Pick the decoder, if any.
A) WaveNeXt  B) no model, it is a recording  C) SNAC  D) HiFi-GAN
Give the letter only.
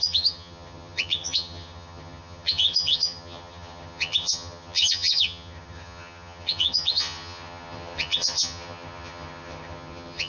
D